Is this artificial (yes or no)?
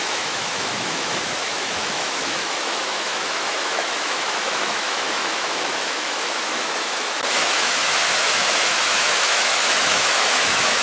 yes